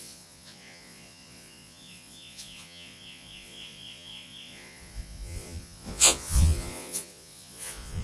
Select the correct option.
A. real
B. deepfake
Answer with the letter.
B